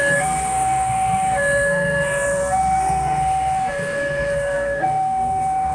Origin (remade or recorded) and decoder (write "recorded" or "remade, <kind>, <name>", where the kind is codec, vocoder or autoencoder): remade, codec, SNAC